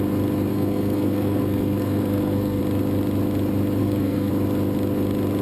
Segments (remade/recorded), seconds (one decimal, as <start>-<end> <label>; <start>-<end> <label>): 0.0-0.5 recorded; 0.5-2.6 remade; 2.6-3.8 recorded; 3.8-4.3 remade; 4.3-5.4 recorded